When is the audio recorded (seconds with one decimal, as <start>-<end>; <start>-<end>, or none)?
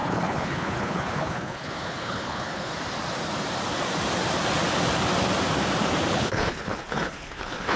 2.7-6.1